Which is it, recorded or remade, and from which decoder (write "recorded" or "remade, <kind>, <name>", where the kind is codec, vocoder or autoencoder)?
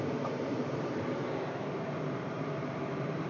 remade, vocoder, BigVGAN v2